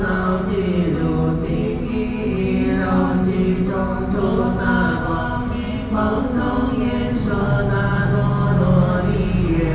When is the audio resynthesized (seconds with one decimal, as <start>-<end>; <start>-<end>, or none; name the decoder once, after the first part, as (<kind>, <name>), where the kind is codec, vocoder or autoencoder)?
none